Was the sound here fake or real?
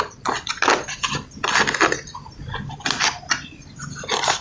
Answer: real